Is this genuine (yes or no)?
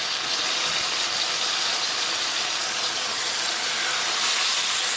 yes